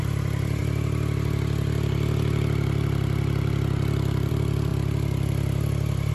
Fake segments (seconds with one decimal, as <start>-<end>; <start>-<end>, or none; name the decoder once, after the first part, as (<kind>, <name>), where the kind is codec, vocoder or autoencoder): 0.0-0.6 (vocoder, BigVGAN v2); 4.3-4.7